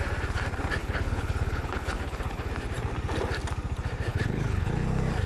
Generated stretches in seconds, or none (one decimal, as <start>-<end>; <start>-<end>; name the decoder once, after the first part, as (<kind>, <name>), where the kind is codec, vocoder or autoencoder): 0.8-2.5 (codec, HILCodec); 4.1-4.7